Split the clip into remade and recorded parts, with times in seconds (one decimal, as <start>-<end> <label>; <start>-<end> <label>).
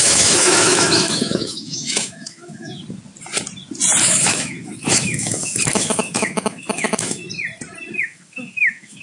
0.0-2.8 remade; 2.8-4.0 recorded; 4.0-7.2 remade; 7.2-8.0 recorded; 8.0-9.0 remade